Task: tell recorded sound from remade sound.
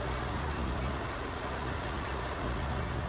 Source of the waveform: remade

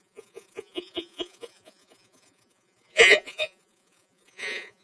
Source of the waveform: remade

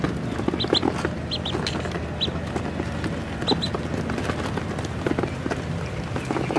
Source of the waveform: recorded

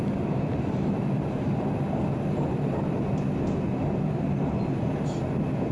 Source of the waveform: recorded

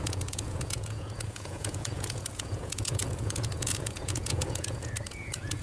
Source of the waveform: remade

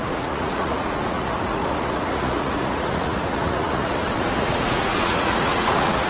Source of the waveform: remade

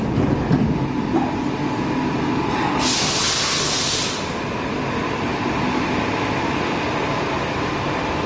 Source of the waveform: recorded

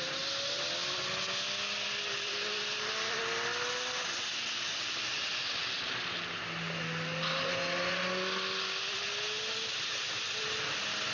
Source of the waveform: recorded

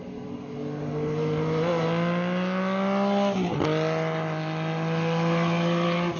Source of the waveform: recorded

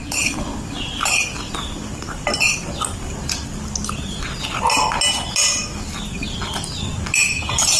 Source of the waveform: recorded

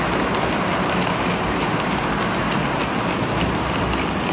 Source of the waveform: recorded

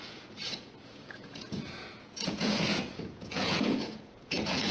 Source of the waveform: remade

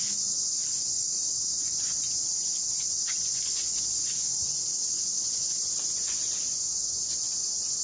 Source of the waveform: remade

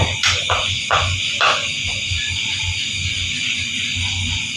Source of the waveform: remade